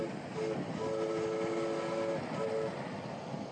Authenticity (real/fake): real